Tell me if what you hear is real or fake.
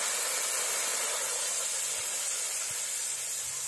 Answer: real